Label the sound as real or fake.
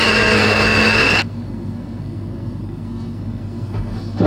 fake